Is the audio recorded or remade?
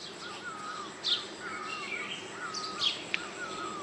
recorded